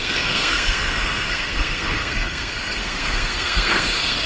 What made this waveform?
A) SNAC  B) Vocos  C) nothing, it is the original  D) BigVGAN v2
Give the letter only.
A